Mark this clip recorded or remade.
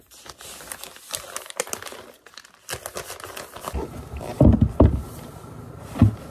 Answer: recorded